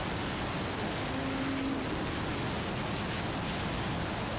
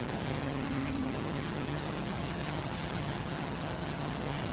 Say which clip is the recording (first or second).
first